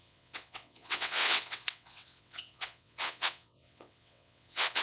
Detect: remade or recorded remade